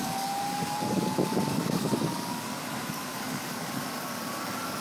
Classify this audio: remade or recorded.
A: remade